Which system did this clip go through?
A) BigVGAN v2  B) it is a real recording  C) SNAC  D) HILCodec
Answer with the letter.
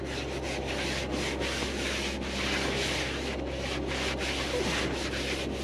B